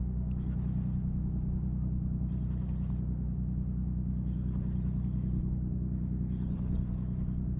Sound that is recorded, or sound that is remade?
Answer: recorded